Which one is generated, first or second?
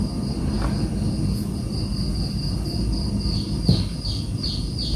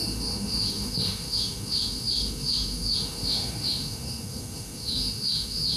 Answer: second